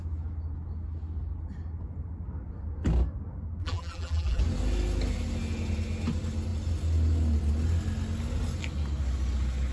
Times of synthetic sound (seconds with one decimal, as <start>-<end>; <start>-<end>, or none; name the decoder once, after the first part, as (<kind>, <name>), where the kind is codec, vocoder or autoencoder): 3.6-4.4 (vocoder, BigVGAN v2)